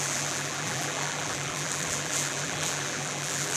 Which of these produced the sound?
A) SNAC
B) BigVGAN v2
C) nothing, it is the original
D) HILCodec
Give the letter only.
B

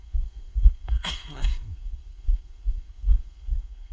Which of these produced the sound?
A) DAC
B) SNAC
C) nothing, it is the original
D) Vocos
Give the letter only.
B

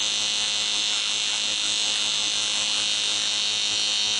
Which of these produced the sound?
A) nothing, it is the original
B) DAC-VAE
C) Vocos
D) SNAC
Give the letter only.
A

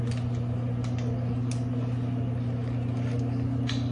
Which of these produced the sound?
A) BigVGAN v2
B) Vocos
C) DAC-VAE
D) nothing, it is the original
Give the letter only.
D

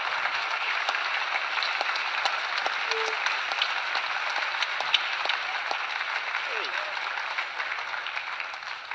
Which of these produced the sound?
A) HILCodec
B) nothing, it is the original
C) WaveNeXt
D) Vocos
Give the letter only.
B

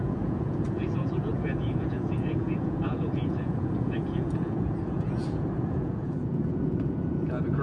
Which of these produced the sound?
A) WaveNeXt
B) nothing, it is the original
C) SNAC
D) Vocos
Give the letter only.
D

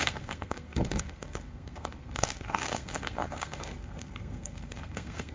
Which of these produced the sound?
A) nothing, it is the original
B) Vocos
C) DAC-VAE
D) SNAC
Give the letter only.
D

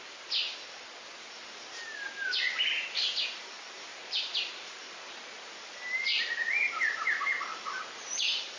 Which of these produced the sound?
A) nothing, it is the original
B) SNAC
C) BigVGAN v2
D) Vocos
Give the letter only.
A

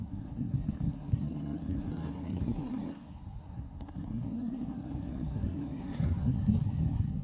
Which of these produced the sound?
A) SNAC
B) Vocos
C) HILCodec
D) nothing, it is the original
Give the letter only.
A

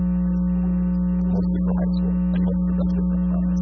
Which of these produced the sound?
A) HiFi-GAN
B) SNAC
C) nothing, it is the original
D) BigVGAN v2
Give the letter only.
C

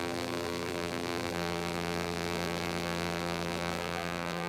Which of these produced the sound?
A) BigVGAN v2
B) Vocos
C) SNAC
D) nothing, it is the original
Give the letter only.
A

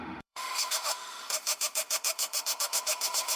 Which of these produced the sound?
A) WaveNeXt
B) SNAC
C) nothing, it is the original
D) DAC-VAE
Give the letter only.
D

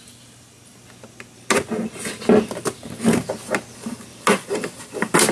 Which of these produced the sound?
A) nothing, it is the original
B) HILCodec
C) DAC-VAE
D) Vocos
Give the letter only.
A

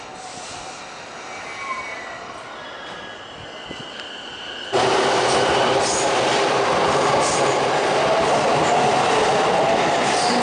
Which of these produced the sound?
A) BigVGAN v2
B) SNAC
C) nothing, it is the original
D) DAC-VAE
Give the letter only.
C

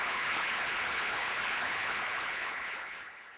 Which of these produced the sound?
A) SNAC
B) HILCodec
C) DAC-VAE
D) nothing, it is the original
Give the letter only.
B